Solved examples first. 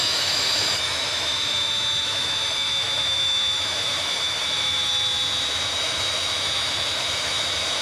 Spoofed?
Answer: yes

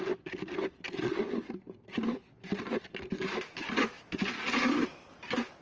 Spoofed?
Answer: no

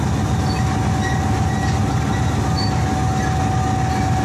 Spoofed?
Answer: no